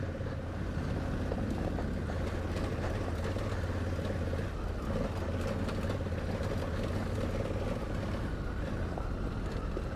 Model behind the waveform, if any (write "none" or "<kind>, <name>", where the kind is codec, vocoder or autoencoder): none